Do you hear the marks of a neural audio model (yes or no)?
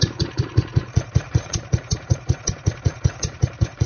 yes